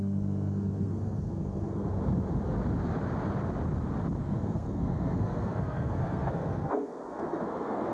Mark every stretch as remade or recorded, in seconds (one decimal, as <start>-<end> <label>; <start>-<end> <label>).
0.0-1.9 remade; 1.9-4.2 recorded; 4.2-7.9 remade